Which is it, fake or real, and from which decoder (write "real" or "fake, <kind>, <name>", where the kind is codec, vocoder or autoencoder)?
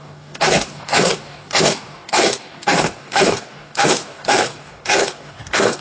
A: fake, codec, DAC